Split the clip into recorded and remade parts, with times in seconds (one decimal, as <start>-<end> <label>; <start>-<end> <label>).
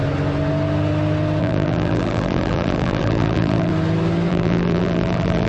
0.0-1.4 recorded; 1.4-3.7 remade; 3.7-4.3 recorded; 4.3-5.5 remade